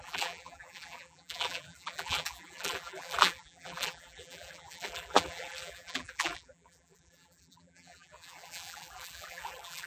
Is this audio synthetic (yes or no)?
yes